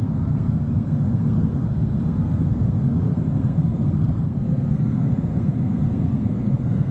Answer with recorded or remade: remade